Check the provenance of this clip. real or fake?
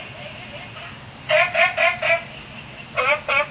real